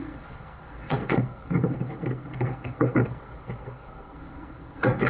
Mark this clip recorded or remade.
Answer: remade